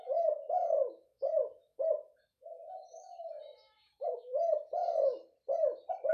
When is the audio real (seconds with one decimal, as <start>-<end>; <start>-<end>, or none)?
4.8-6.1